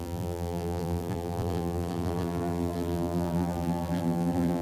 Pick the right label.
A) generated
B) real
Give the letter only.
A